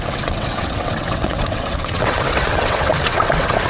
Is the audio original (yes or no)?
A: no